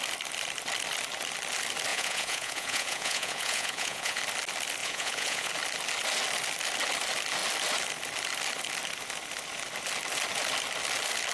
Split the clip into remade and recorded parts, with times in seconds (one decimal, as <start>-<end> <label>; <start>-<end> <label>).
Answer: 0.0-1.9 recorded; 1.9-4.2 remade; 4.2-4.8 recorded; 4.8-5.5 remade; 5.5-11.3 recorded